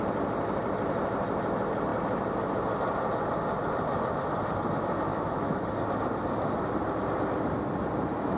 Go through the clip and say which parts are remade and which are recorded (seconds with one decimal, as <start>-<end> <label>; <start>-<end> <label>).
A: 0.0-5.1 recorded; 5.1-5.7 remade; 5.7-8.4 recorded